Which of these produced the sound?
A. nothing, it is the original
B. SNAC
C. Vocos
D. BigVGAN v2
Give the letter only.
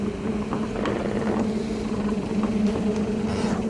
A